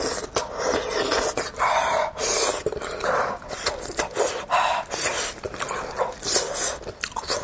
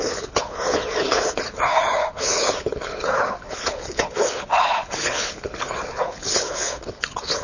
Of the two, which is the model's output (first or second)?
second